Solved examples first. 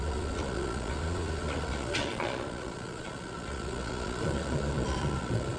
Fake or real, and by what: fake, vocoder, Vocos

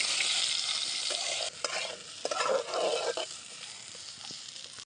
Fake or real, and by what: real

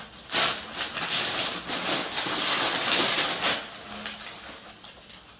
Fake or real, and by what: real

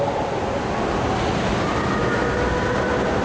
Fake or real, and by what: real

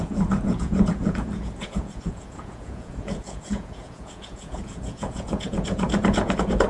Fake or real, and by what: fake, vocoder, Vocos